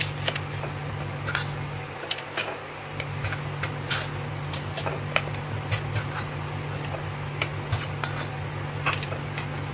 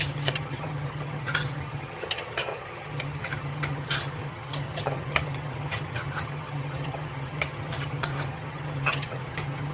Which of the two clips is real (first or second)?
first